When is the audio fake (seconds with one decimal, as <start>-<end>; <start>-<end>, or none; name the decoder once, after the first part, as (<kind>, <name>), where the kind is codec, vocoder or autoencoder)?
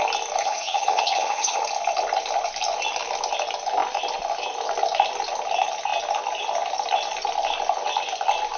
0.4-1.6 (vocoder, HiFi-GAN)